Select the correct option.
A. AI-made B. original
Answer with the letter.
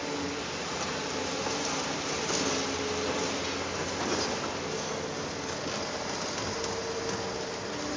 B